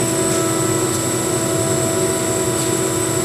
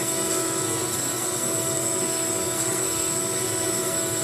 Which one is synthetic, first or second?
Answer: second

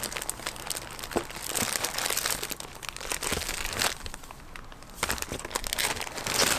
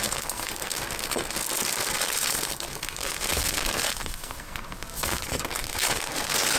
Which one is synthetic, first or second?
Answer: second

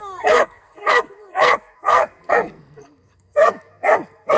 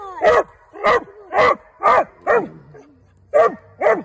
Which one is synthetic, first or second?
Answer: first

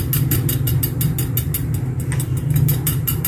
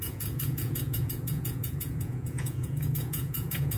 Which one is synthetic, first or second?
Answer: second